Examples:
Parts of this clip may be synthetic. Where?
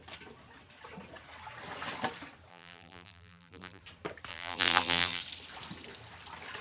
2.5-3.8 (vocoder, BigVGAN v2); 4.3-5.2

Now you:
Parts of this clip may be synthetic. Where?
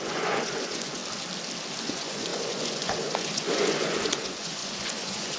0.0-1.0 (vocoder, Vocos); 1.8-5.4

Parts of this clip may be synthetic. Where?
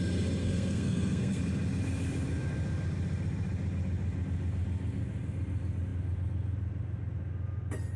0.4-1.4 (codec, SNAC)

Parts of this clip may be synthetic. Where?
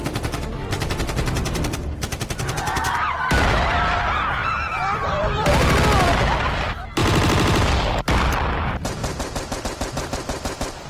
0.0-9.0 (vocoder, BigVGAN v2); 9.6-10.9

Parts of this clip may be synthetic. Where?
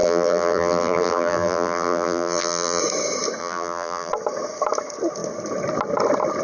0.0-2.8 (vocoder, BigVGAN v2); 3.4-4.1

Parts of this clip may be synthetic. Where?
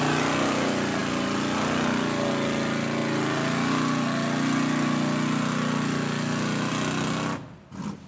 none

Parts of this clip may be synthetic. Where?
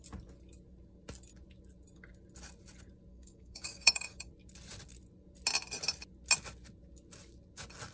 3.1-4.3 (codec, DAC)